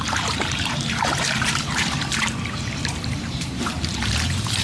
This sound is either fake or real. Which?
fake